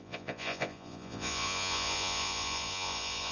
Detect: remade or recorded remade